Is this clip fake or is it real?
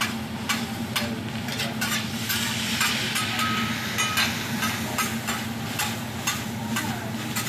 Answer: real